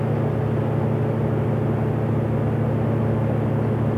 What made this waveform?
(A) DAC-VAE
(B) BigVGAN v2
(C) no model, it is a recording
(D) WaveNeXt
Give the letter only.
C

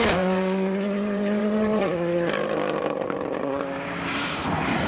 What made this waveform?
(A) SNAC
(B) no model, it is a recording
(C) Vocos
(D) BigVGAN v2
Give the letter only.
D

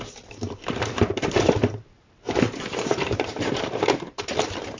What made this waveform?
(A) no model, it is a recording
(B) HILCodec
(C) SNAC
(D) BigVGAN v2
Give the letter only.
D